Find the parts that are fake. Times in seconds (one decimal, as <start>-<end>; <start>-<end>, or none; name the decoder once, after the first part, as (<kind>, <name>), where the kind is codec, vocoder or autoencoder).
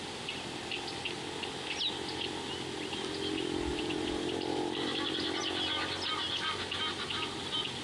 3.7-5.4 (vocoder, BigVGAN v2)